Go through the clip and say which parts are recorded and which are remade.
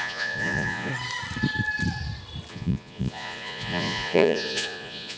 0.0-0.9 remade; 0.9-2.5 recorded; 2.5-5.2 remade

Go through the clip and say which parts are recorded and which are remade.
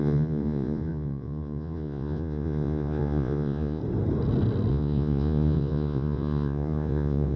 0.0-3.8 remade; 3.8-4.7 recorded; 4.7-7.4 remade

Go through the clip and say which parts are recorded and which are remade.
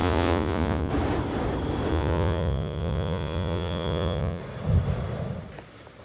0.0-0.9 remade; 0.9-1.9 recorded; 1.9-4.4 remade; 4.4-6.0 recorded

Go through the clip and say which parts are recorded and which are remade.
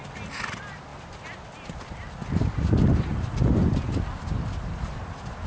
0.0-5.5 recorded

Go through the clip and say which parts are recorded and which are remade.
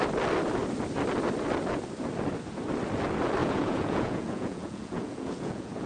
0.0-3.4 recorded; 3.4-5.9 remade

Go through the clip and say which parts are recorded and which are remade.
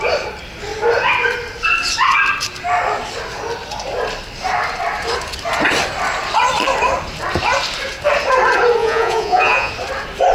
0.0-8.8 recorded; 8.8-9.7 remade; 9.7-10.3 recorded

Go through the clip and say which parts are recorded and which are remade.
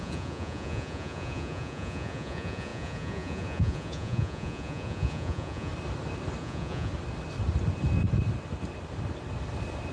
0.0-5.7 remade; 5.7-6.4 recorded; 6.4-6.9 remade; 6.9-9.9 recorded